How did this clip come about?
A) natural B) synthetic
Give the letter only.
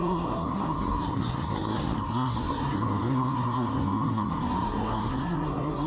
B